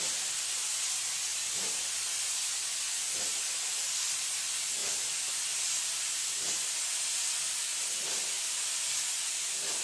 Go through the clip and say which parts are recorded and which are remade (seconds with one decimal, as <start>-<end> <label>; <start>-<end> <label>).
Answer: 0.0-9.8 recorded

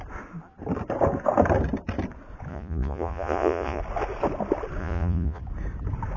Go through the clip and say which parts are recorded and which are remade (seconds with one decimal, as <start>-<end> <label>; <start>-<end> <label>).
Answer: 0.0-2.5 recorded; 2.5-3.8 remade; 3.8-4.8 recorded; 4.8-5.4 remade; 5.4-6.2 recorded

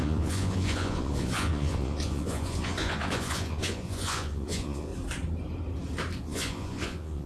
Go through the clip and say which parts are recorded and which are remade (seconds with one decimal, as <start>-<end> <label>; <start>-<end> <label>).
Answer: 0.0-4.9 remade; 4.9-6.2 recorded; 6.2-7.3 remade

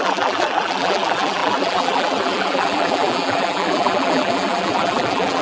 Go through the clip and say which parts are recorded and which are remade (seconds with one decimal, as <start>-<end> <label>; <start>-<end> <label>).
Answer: 0.0-5.4 remade

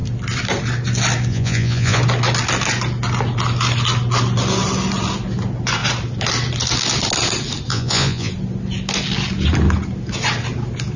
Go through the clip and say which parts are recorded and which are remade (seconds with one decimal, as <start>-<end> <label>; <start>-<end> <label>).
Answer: 0.0-1.3 recorded; 1.3-2.0 remade; 2.0-7.7 recorded; 7.7-8.3 remade; 8.3-11.0 recorded

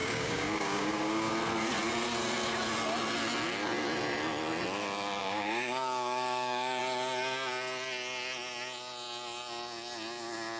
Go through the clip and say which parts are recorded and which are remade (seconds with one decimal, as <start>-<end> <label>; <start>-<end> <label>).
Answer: 0.0-1.3 remade; 1.3-5.2 recorded; 5.2-6.8 remade; 6.8-10.6 recorded

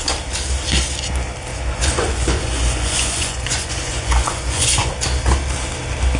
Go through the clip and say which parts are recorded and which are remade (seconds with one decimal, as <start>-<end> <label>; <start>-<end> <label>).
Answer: 0.0-1.5 recorded; 1.5-4.9 remade; 4.9-6.2 recorded